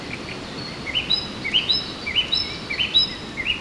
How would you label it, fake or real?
real